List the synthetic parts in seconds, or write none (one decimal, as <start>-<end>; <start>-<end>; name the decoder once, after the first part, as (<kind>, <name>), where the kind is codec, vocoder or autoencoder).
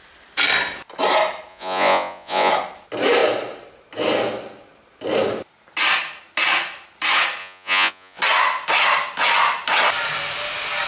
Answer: 1.5-2.5 (vocoder, Vocos); 7.4-8.2